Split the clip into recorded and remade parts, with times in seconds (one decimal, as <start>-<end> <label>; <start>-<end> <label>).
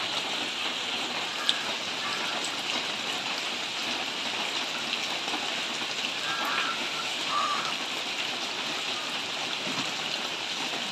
0.0-6.7 recorded; 6.7-7.6 remade; 7.6-10.9 recorded